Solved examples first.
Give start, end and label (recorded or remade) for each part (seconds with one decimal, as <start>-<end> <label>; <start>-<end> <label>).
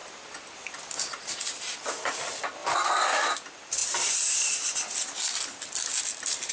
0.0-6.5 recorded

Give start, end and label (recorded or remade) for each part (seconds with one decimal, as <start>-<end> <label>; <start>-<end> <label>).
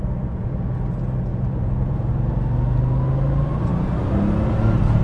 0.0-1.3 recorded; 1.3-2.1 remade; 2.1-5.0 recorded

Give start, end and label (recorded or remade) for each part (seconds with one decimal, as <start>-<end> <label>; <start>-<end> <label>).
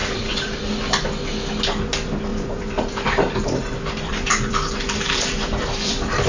0.0-0.6 remade; 0.6-2.3 recorded; 2.3-6.3 remade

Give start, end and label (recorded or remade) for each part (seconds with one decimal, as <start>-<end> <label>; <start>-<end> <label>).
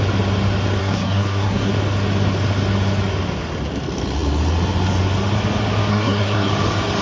0.0-0.8 recorded; 0.8-1.7 remade; 1.7-5.9 recorded; 5.9-6.5 remade; 6.5-7.0 recorded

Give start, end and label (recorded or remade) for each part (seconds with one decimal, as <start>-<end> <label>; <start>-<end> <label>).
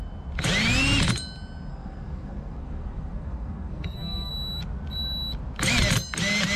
0.0-1.7 recorded; 1.7-4.3 remade; 4.3-6.6 recorded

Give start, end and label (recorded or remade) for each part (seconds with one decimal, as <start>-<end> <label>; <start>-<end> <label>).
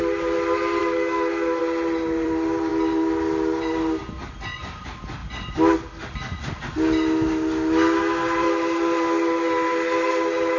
0.0-0.8 recorded; 0.8-1.6 remade; 1.6-10.6 recorded